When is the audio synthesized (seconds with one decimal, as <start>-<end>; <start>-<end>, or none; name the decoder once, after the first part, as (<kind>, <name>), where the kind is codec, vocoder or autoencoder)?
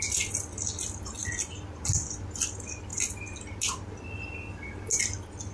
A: none